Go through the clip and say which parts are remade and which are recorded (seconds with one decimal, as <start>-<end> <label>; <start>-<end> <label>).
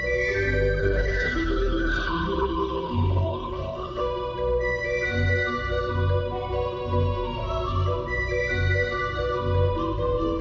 0.0-0.8 recorded; 0.8-4.0 remade; 4.0-10.4 recorded